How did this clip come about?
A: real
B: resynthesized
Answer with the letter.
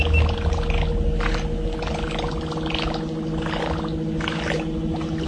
A